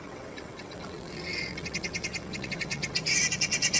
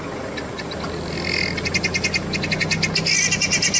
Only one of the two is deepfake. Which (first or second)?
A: first